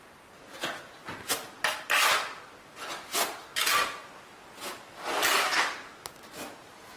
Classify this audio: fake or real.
real